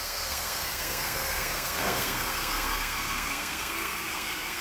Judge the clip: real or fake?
fake